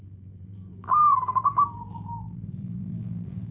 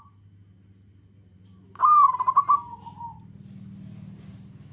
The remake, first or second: first